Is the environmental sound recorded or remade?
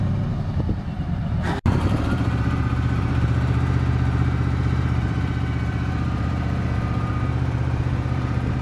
remade